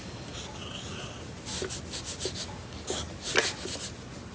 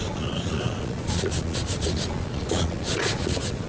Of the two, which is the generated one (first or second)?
second